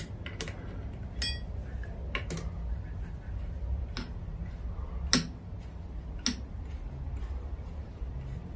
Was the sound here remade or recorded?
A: recorded